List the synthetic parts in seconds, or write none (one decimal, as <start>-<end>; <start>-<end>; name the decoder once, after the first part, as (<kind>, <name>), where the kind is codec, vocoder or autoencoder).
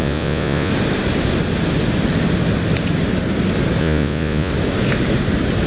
0.0-0.7 (vocoder, Vocos); 3.8-4.5